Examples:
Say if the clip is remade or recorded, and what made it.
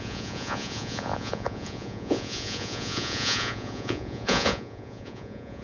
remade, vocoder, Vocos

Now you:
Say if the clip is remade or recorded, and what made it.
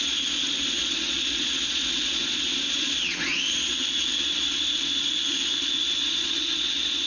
remade, vocoder, Vocos